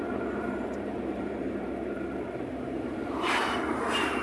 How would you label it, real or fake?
fake